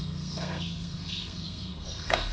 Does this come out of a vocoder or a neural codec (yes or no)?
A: yes